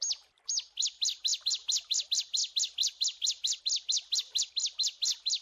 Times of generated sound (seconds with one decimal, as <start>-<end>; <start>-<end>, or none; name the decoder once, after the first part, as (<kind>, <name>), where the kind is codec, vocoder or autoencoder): none

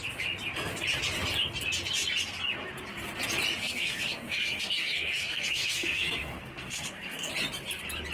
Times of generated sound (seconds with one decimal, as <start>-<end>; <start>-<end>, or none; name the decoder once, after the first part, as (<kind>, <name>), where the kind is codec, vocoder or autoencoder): 3.6-7.3 (codec, SNAC)

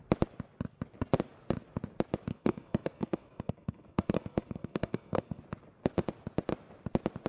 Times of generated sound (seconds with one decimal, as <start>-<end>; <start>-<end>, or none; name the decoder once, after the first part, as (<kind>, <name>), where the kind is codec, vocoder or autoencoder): 2.3-5.4 (codec, SNAC)

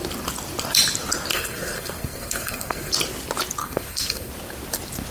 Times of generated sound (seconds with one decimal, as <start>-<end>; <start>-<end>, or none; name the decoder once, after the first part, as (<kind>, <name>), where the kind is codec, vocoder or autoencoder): 1.3-2.9 (codec, SNAC); 3.6-4.3